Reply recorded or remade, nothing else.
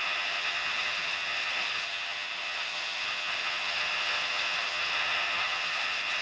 remade